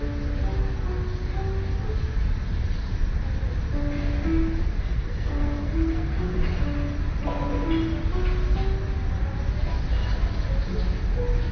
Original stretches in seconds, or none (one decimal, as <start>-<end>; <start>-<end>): 0.0-4.6; 6.4-11.5